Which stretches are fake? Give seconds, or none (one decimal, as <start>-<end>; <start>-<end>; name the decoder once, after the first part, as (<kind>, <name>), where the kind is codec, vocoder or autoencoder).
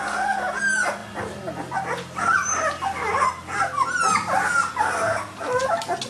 none